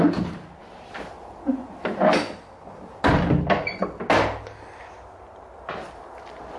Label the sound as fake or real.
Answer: real